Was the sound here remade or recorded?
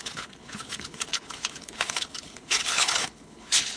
remade